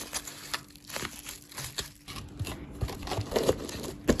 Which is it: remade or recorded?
recorded